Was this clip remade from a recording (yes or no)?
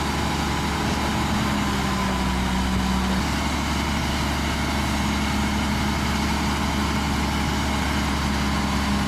no